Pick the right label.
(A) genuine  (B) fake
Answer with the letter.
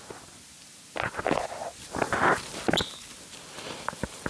A